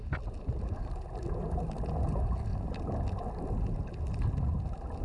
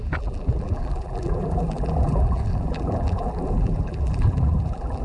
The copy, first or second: second